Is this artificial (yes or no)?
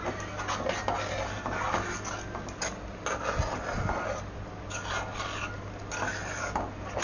no